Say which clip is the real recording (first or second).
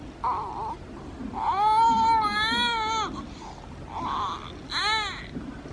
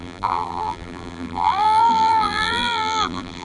first